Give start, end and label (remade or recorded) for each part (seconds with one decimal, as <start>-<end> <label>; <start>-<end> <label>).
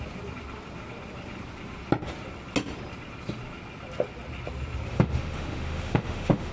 0.0-4.9 recorded; 4.9-6.5 remade